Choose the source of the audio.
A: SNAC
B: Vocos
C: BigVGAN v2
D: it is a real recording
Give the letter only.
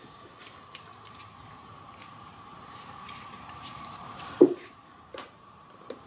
C